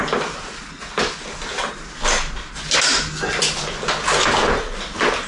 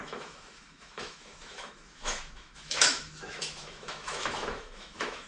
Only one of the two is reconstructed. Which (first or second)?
second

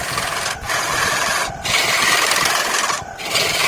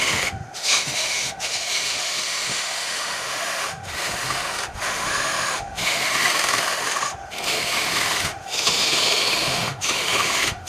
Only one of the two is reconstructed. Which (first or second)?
second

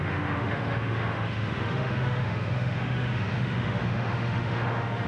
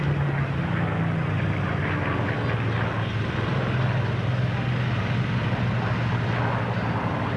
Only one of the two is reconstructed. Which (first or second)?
first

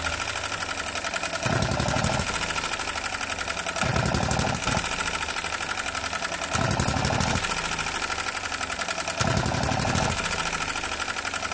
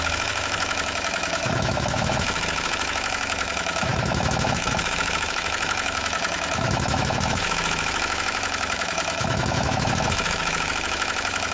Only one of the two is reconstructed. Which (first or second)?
second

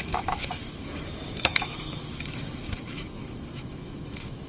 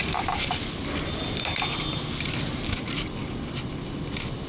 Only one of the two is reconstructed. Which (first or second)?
first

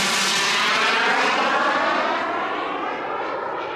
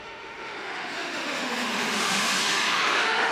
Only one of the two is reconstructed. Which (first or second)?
second